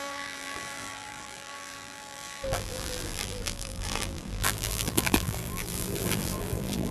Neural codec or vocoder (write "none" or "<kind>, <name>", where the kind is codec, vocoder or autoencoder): vocoder, BigVGAN v2